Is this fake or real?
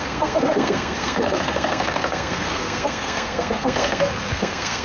fake